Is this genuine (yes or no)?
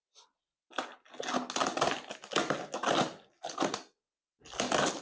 yes